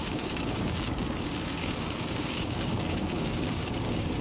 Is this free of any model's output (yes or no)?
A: no